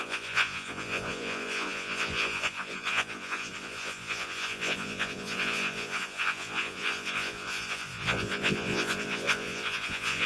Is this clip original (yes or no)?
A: no